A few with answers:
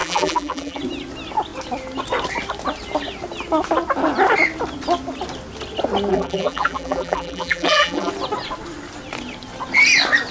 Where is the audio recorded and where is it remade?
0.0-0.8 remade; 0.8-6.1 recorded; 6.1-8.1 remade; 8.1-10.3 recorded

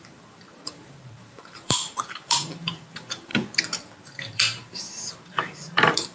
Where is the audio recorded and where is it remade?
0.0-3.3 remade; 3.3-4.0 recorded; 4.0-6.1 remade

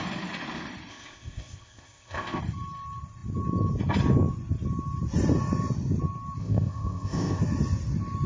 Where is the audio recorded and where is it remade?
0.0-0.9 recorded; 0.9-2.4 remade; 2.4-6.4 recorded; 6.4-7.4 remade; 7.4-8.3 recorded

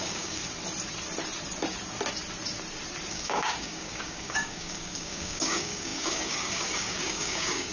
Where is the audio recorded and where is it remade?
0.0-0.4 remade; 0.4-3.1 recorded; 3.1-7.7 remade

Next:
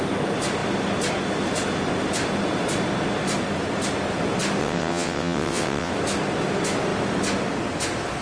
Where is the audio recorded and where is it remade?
0.0-4.6 recorded; 4.6-5.9 remade; 5.9-8.2 recorded